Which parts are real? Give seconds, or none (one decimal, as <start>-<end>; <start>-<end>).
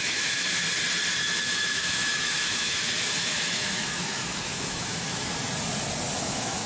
0.6-1.2; 5.3-6.2